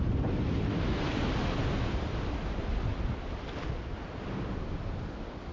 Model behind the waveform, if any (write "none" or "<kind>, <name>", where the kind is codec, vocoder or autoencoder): none